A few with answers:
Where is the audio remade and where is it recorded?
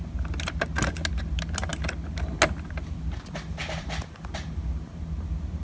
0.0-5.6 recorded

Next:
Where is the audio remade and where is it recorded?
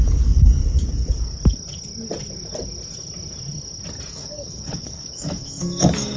0.0-0.6 remade; 0.6-4.1 recorded; 4.1-6.2 remade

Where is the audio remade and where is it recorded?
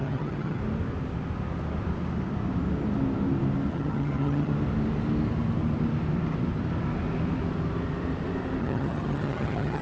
0.0-0.6 remade; 0.6-3.7 recorded; 3.7-4.5 remade; 4.5-8.6 recorded; 8.6-9.8 remade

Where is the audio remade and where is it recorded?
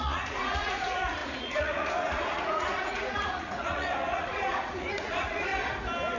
0.0-5.5 remade; 5.5-6.2 recorded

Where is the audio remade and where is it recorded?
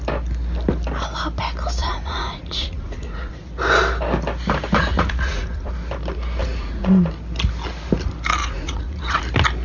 0.0-1.8 recorded; 1.8-3.3 remade; 3.3-4.9 recorded; 4.9-5.7 remade; 5.7-6.4 recorded; 6.4-7.1 remade; 7.1-8.4 recorded; 8.4-9.2 remade; 9.2-9.6 recorded